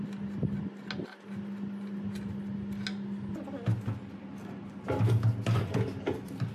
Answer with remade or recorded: recorded